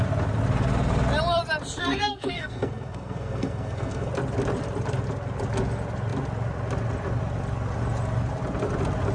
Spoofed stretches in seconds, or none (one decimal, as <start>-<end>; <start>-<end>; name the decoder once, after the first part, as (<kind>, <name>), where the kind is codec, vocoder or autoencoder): 1.8-4.1 (codec, SNAC)